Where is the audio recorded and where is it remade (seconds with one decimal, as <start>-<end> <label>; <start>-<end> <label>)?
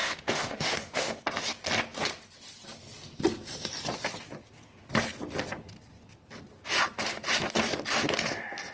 0.0-1.2 remade; 1.2-8.7 recorded